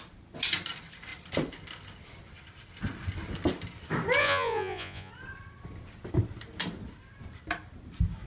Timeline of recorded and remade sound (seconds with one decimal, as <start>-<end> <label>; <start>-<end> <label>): 0.0-4.2 recorded; 4.2-5.1 remade; 5.1-8.3 recorded